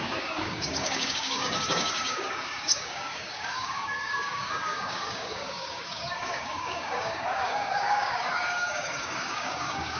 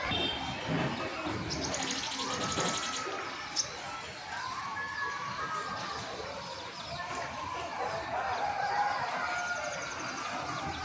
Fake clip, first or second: first